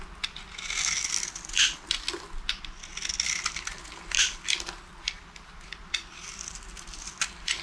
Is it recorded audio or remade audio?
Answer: recorded